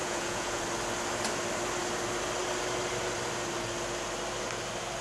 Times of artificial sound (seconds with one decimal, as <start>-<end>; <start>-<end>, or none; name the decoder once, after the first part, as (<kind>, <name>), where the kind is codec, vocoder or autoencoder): 0.0-0.6 (vocoder, Vocos)